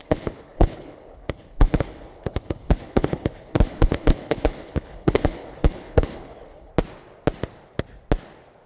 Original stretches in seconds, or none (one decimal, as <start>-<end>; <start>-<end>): 6.7-8.7